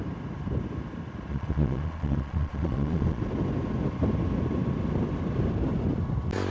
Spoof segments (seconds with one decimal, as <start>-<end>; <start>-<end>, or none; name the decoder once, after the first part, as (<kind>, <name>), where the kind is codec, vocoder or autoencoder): 1.3-3.2 (vocoder, Vocos)

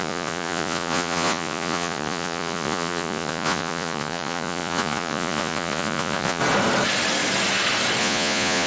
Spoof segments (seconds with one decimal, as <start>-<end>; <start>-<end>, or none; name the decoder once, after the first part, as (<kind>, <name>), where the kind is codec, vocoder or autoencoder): 0.0-6.4 (vocoder, Vocos); 8.0-8.7

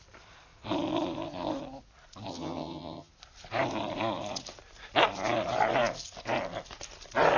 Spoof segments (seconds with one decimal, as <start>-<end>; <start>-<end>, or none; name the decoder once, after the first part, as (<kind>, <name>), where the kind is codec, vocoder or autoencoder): 2.3-3.1 (vocoder, HiFi-GAN)

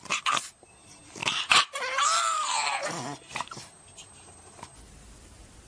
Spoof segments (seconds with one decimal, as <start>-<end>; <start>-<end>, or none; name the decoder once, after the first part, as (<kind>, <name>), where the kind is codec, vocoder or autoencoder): 1.2-4.6 (vocoder, BigVGAN v2)

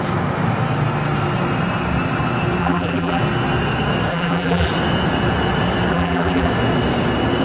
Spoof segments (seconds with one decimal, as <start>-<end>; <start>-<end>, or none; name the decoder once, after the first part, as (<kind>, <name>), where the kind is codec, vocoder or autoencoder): 2.6-3.2 (vocoder, BigVGAN v2); 4.1-4.7; 5.9-6.5

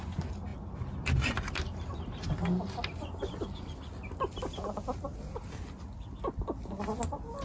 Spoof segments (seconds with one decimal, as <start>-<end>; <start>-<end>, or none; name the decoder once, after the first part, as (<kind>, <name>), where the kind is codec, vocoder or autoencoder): none

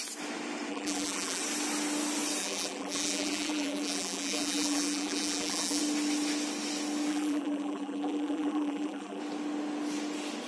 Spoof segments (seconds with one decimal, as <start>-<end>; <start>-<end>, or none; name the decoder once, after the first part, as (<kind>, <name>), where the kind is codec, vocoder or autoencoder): 0.7-1.4 (vocoder, BigVGAN v2); 2.4-5.8; 7.1-9.2

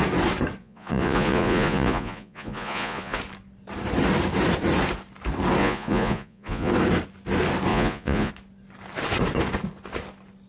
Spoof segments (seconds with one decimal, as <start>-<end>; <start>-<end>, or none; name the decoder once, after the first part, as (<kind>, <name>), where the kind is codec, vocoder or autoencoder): 0.6-3.2 (vocoder, Vocos); 5.6-6.7; 7.7-8.3